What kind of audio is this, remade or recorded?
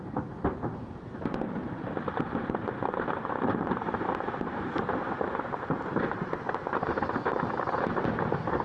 remade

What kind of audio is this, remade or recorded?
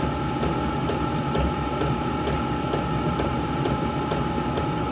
recorded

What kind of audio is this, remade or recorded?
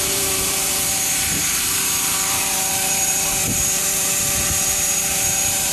remade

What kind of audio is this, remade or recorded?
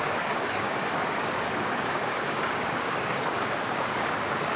remade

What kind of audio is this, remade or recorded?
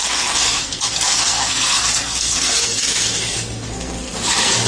remade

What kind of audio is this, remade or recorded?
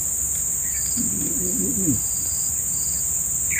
recorded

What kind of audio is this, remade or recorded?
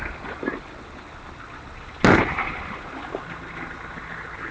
recorded